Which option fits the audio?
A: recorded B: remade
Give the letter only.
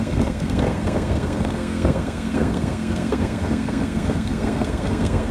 B